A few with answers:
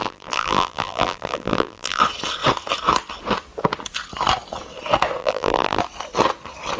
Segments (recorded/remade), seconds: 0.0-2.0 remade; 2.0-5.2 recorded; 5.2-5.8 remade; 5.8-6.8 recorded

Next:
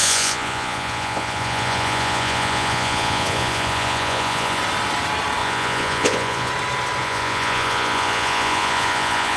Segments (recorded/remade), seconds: 0.0-4.6 remade; 4.6-5.4 recorded; 5.4-6.5 remade; 6.5-7.0 recorded; 7.0-9.4 remade

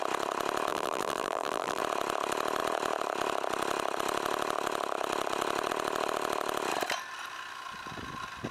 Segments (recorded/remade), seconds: 0.0-0.7 recorded; 0.7-1.8 remade; 1.8-8.5 recorded

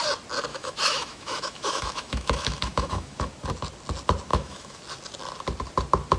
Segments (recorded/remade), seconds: 0.0-0.5 recorded; 0.5-3.3 remade; 3.3-4.3 recorded; 4.3-4.8 remade; 4.8-6.2 recorded

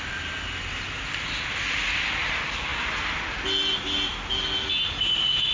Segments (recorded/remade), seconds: 0.0-5.5 recorded

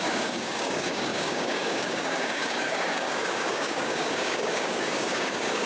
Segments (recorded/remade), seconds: 0.0-5.7 remade

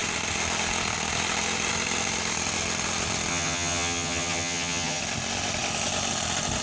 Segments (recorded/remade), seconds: 0.0-3.3 recorded; 3.3-5.0 remade; 5.0-6.6 recorded

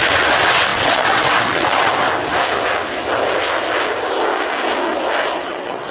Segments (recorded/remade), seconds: 0.0-1.9 remade; 1.9-5.4 recorded; 5.4-5.9 remade